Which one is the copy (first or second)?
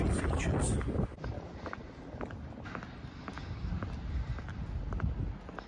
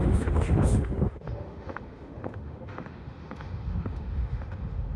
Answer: second